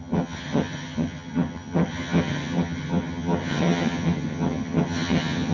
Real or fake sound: fake